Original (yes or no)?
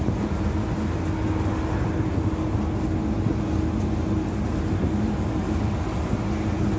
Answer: yes